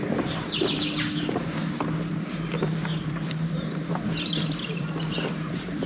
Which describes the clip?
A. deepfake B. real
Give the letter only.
A